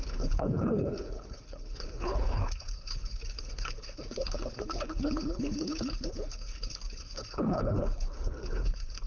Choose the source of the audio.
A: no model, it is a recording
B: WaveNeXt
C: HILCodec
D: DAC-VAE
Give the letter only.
C